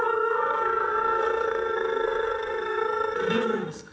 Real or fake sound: fake